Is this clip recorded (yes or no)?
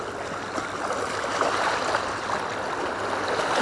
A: yes